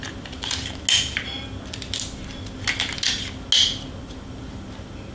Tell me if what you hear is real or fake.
real